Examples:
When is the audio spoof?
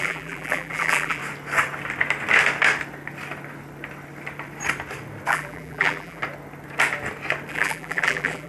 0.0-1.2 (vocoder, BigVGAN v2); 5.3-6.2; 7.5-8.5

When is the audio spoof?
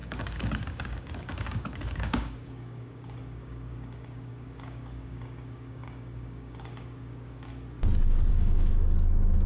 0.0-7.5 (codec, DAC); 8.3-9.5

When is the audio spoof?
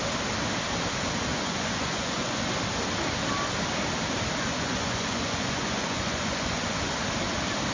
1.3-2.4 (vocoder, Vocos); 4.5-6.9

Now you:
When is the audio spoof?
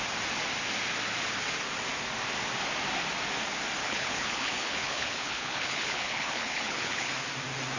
3.8-7.1 (codec, HILCodec)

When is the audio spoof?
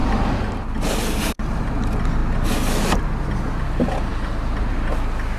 none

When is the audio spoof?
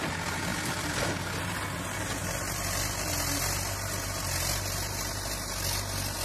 0.5-1.3 (vocoder, BigVGAN v2); 2.2-2.9